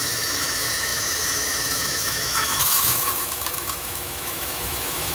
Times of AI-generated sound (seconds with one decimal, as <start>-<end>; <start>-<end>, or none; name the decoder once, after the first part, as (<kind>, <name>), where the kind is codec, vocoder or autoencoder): 0.0-5.1 (autoencoder, DAC-VAE)